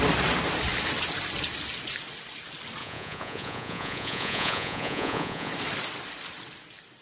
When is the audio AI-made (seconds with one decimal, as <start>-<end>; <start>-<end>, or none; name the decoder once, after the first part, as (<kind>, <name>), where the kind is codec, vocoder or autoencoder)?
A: 2.8-5.5 (vocoder, Vocos)